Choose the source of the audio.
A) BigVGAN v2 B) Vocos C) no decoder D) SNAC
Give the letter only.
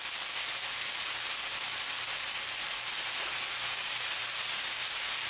C